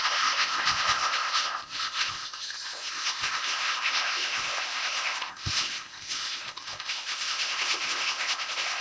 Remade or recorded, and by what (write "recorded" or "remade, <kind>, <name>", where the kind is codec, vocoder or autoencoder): remade, codec, ZipCodec